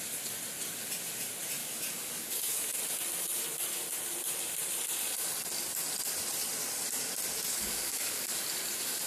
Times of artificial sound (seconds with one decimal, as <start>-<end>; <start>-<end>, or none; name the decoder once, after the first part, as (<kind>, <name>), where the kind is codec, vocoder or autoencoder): 1.6-2.8 (codec, DAC); 7.5-8.4